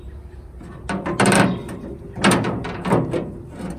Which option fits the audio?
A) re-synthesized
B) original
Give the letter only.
B